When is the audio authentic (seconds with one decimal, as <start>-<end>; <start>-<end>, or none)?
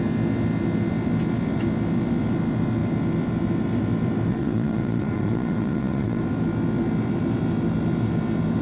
0.0-4.3; 6.2-8.6